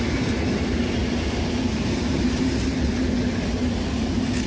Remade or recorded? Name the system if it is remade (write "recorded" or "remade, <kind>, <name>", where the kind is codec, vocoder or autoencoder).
recorded